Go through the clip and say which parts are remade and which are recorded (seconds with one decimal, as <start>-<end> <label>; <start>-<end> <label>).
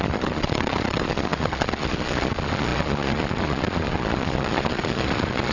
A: 0.0-5.5 remade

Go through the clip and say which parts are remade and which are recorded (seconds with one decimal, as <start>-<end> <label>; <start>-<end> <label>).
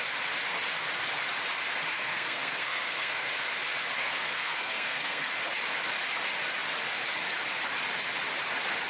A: 0.0-1.9 recorded; 1.9-3.3 remade; 3.3-4.0 recorded; 4.0-5.3 remade; 5.3-8.9 recorded